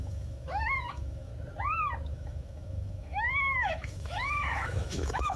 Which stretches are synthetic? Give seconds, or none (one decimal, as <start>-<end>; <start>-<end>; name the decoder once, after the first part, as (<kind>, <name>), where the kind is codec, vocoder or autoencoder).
0.0-1.3 (autoencoder, DAC-VAE); 2.1-5.4